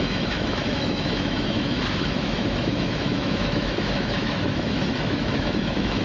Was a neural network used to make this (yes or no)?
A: yes